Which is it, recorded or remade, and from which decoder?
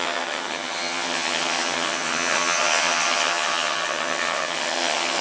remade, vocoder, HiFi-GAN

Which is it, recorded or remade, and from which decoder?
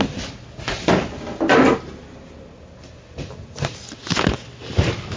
recorded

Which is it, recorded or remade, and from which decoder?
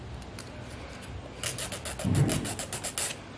recorded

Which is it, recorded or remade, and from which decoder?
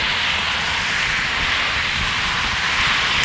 recorded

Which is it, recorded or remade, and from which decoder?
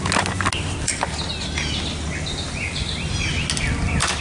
recorded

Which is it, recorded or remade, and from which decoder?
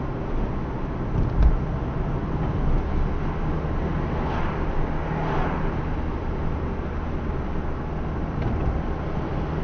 recorded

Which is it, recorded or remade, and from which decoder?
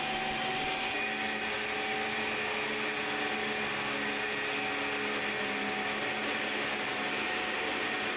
recorded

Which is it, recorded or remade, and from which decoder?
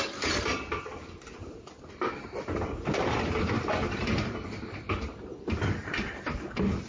recorded